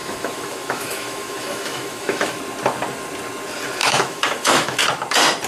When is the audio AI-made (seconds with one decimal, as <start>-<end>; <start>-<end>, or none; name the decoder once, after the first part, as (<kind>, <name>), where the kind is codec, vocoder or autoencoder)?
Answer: 0.0-2.4 (autoencoder, DAC-VAE); 3.8-4.8